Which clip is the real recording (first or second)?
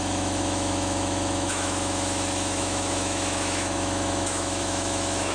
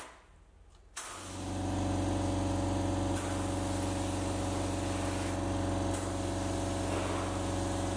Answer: second